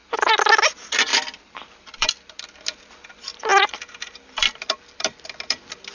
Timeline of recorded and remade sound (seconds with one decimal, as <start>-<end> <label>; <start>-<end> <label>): 0.0-0.5 recorded; 0.5-5.9 remade